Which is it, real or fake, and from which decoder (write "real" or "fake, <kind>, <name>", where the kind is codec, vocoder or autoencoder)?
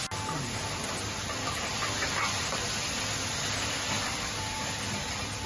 real